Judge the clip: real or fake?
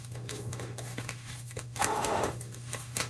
fake